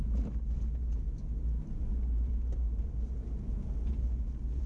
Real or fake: real